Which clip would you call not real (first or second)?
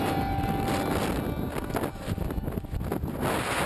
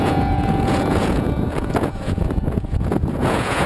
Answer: second